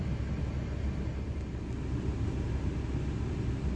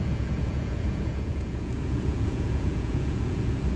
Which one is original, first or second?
first